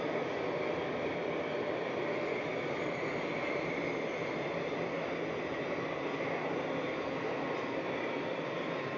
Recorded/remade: recorded